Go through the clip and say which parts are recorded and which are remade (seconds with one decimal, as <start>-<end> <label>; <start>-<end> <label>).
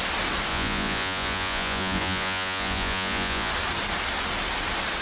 0.0-0.5 recorded; 0.5-3.5 remade; 3.5-5.0 recorded